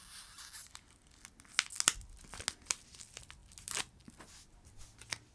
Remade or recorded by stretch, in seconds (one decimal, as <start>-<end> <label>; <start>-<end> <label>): 0.0-5.3 recorded